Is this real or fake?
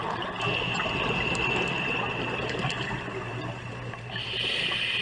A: real